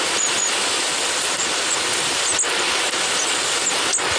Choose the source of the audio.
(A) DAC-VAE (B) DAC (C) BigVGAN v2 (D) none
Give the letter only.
D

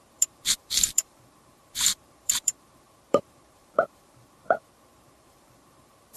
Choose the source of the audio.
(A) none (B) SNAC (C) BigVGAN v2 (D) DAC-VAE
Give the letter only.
C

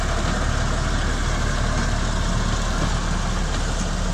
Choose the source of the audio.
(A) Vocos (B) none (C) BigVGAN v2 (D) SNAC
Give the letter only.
B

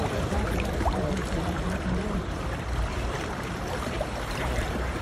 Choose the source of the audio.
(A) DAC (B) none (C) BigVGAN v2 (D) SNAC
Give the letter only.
C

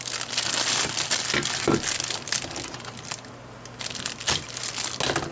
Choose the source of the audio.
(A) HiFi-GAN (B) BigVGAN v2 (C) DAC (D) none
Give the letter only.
D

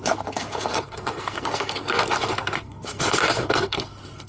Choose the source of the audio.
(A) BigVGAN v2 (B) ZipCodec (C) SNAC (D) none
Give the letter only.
C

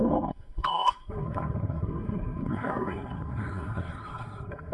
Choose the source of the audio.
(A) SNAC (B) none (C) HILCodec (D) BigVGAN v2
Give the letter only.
A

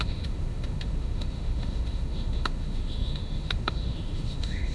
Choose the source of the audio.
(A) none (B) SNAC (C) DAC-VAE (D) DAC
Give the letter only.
C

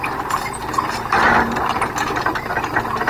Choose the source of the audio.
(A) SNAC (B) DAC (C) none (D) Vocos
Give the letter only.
C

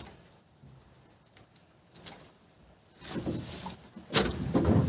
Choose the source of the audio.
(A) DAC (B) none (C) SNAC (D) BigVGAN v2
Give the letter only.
B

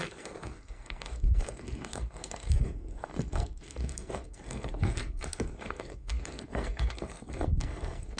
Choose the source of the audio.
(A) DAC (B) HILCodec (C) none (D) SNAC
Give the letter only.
D